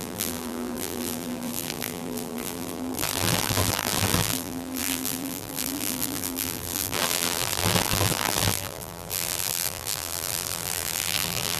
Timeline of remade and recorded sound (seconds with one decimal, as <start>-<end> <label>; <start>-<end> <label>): 0.0-11.6 remade